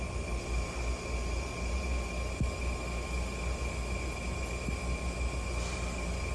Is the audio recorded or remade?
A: recorded